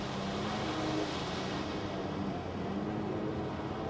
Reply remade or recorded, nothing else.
recorded